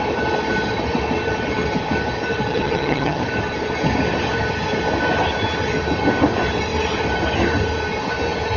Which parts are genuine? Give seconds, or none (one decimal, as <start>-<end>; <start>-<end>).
0.0-2.5; 3.2-8.6